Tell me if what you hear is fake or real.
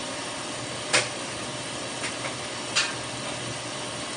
real